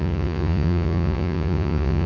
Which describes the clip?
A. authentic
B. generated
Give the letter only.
B